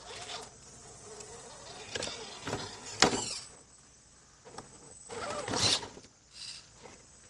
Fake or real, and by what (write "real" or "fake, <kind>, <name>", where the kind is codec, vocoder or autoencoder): real